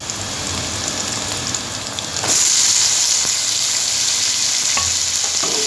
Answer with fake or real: real